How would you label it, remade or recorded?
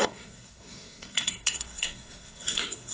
remade